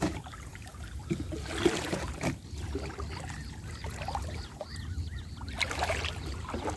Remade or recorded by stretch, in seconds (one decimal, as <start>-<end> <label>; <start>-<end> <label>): 0.0-6.8 recorded